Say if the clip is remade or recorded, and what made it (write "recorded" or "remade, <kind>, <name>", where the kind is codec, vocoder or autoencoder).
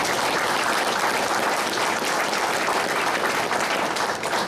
remade, vocoder, BigVGAN v2